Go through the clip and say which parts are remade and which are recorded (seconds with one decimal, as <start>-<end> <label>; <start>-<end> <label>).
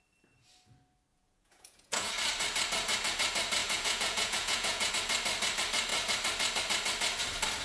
0.0-1.1 recorded; 1.1-2.1 remade; 2.1-3.6 recorded; 3.6-4.9 remade; 4.9-7.6 recorded